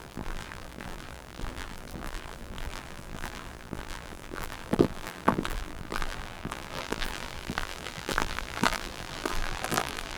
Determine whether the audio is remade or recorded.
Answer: remade